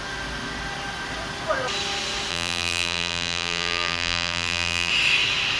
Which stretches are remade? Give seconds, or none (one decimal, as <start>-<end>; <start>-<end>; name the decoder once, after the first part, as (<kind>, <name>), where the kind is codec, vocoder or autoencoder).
2.3-4.9 (vocoder, BigVGAN v2)

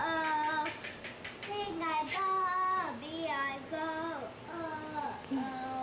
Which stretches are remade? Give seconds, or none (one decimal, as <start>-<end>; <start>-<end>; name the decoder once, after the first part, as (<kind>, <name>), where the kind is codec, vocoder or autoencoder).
none

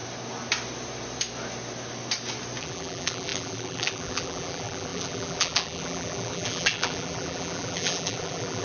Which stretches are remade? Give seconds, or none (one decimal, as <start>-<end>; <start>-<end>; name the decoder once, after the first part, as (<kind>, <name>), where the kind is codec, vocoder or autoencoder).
2.6-8.6 (vocoder, BigVGAN v2)

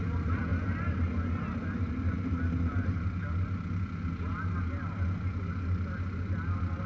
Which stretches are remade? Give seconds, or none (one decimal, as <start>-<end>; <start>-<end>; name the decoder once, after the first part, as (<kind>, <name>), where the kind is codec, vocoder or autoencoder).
none

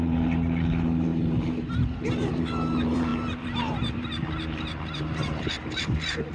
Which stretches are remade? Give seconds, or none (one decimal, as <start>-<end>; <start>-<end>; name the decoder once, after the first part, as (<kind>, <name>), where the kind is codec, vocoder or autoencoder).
0.0-6.3 (vocoder, BigVGAN v2)